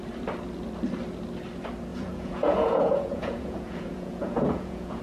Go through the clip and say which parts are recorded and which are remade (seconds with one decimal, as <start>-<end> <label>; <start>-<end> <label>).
0.0-1.9 recorded; 1.9-5.0 remade